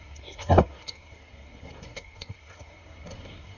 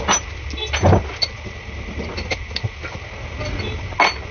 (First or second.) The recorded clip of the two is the second